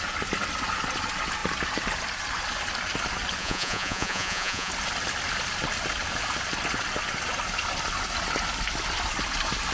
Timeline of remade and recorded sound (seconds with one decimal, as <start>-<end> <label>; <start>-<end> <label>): 0.0-3.4 recorded; 3.4-4.7 remade; 4.7-9.7 recorded